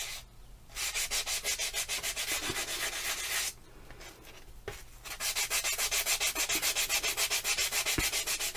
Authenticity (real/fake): real